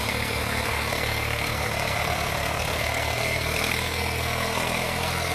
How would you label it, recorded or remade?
remade